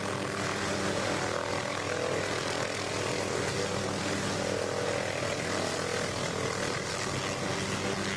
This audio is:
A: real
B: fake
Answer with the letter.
A